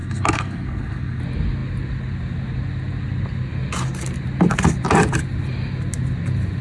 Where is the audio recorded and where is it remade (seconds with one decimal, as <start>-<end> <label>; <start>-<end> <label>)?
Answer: 0.0-1.2 remade; 1.2-6.6 recorded